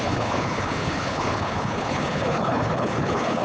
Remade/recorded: remade